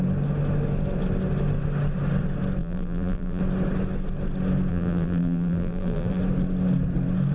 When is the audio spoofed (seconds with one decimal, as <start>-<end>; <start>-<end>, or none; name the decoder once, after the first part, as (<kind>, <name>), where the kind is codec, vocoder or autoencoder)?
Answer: 2.6-3.4 (vocoder, BigVGAN v2); 4.7-6.2